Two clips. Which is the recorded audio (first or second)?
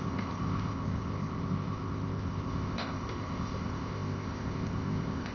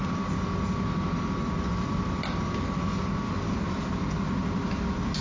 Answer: second